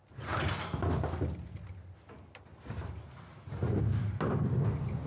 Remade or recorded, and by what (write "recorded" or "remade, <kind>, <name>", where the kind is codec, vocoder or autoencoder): recorded